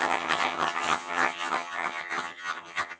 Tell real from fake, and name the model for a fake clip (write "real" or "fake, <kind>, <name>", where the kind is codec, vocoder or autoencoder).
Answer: fake, vocoder, HiFi-GAN